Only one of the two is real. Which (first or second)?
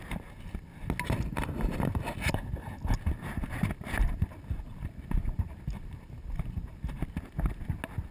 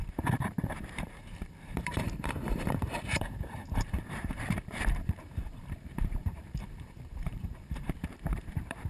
first